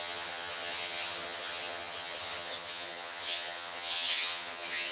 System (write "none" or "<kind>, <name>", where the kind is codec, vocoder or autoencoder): vocoder, HiFi-GAN